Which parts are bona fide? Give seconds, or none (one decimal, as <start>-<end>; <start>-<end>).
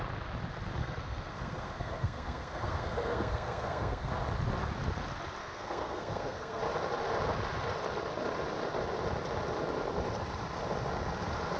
0.0-0.8; 4.1-5.4; 6.6-11.6